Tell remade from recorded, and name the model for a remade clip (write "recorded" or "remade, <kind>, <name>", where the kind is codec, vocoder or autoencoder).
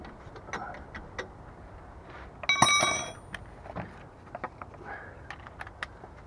recorded